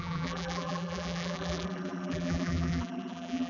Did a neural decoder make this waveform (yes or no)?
yes